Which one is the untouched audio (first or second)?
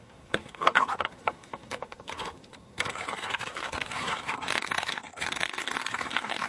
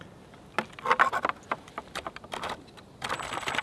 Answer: second